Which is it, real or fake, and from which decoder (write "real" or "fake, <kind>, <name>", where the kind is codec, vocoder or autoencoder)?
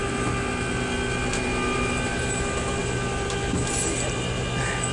real